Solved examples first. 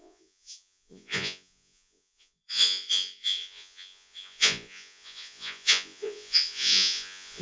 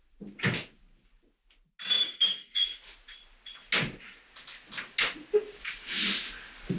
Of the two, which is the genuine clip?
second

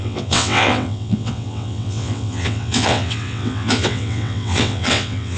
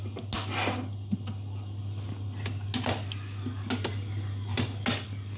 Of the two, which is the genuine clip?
second